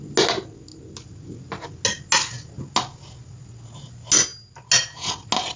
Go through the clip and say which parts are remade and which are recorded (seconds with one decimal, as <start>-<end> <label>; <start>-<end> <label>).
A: 0.0-5.6 recorded

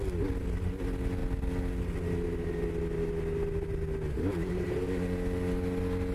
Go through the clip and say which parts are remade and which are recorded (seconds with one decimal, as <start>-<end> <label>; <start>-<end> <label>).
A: 0.0-6.1 recorded

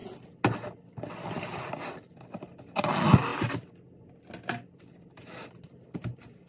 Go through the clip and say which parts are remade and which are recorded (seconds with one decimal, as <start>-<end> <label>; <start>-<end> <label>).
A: 0.0-6.5 recorded

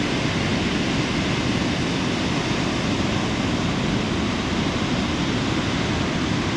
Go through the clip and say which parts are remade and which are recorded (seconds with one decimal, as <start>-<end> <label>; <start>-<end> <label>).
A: 0.0-6.6 recorded